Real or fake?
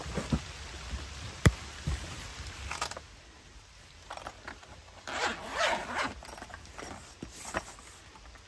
real